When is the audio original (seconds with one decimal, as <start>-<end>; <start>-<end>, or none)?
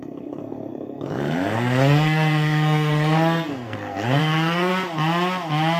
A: 4.7-5.8